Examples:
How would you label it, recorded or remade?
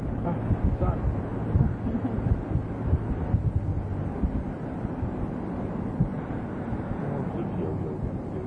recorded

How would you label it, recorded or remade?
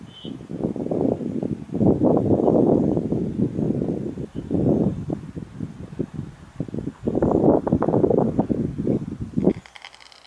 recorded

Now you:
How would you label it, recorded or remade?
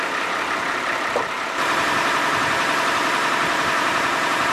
remade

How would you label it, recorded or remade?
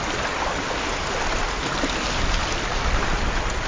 recorded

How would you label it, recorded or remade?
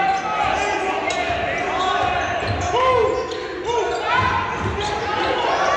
recorded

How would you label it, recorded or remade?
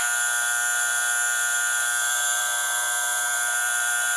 remade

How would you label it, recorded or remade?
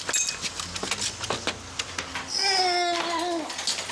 recorded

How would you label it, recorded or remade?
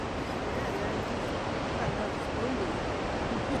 recorded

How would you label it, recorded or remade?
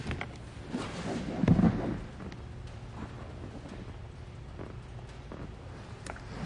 recorded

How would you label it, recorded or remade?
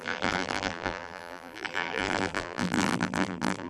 remade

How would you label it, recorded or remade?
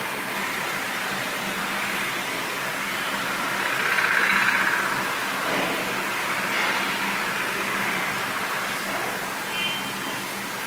recorded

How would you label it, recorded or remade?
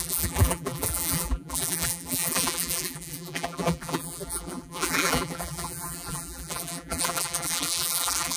remade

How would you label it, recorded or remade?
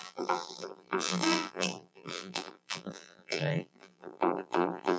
remade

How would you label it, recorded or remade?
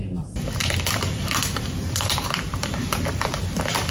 remade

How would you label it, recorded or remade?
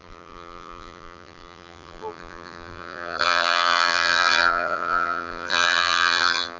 remade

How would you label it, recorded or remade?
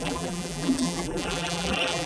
remade